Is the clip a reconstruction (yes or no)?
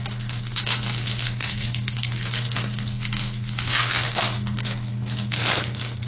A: yes